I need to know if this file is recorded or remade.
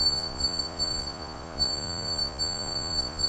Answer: remade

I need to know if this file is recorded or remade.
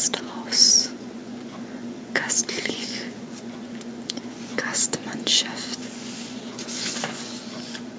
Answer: remade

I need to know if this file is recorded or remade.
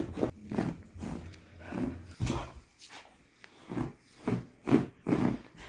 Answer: recorded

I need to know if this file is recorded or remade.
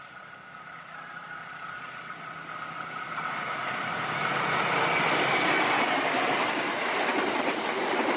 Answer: recorded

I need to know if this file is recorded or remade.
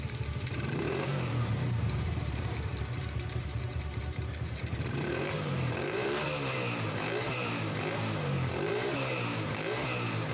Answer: remade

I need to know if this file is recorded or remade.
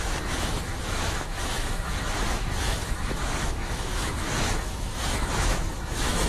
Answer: remade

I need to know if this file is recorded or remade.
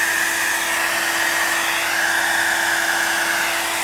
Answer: recorded